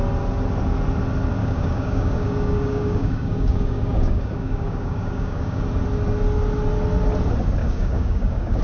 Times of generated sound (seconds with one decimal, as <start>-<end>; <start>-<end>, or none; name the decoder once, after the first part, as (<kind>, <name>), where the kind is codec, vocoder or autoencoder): 1.4-5.6 (codec, DAC); 7.6-8.6